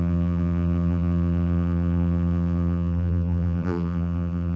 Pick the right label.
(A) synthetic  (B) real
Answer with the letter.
A